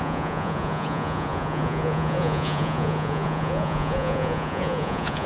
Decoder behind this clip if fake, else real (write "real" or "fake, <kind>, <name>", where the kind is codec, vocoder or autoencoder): fake, vocoder, Vocos